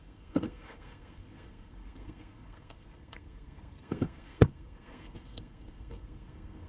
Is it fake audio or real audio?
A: fake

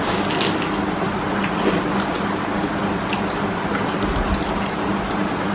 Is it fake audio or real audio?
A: real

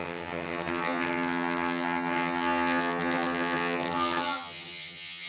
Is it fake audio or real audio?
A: fake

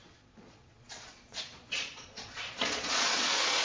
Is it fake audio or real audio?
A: fake